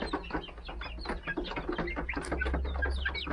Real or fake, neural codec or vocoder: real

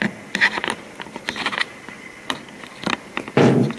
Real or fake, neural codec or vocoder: real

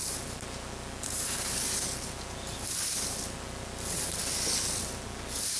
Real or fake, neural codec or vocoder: real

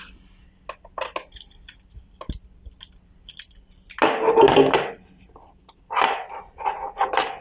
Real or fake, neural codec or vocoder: fake, vocoder, BigVGAN v2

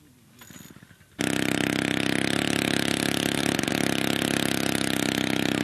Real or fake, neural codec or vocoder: real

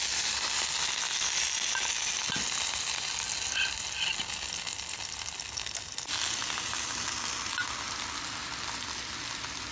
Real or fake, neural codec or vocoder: real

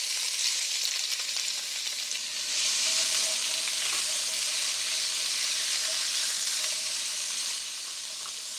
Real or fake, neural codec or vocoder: real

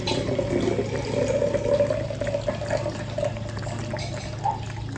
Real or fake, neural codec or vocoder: real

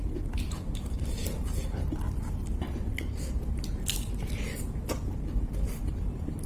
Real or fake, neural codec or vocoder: real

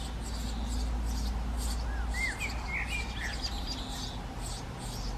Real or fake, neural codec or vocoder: real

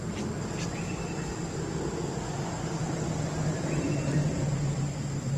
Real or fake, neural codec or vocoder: real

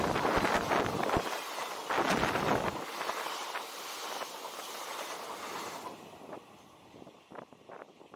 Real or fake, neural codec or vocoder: real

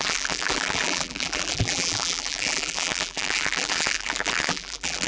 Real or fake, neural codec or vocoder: fake, vocoder, BigVGAN v2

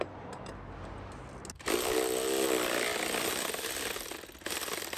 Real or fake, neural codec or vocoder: real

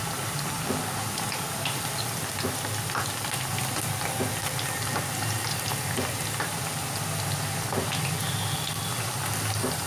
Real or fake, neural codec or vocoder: real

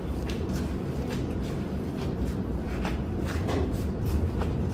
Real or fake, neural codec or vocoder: fake, vocoder, BigVGAN v2